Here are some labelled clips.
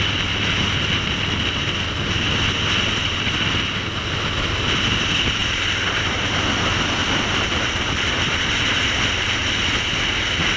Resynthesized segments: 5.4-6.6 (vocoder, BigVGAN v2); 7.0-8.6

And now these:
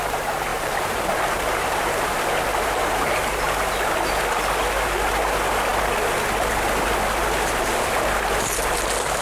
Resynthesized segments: 0.5-1.0 (vocoder, BigVGAN v2); 2.8-3.7

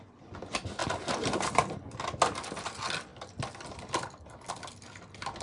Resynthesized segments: 0.8-1.5 (vocoder, BigVGAN v2)